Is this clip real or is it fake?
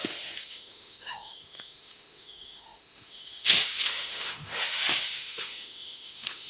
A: fake